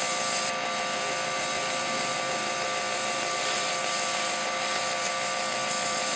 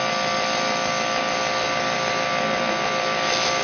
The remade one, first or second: first